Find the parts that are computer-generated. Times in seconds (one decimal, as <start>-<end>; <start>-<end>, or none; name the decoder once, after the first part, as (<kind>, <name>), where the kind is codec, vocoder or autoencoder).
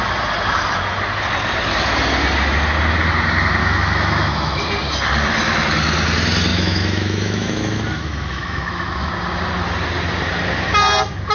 3.6-4.6 (autoencoder, DAC-VAE); 6.5-9.1